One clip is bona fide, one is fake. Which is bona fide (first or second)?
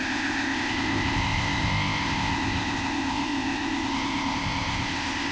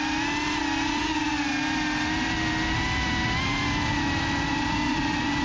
second